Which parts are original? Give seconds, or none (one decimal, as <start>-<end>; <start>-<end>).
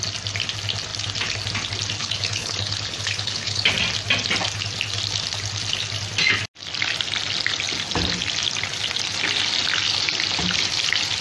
0.0-2.0; 3.7-11.2